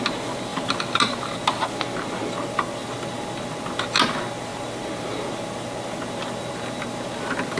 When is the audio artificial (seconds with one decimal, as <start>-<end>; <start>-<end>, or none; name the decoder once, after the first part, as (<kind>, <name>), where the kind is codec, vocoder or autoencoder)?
none